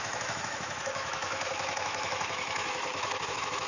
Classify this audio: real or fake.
fake